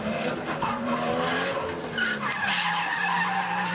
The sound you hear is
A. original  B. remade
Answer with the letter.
A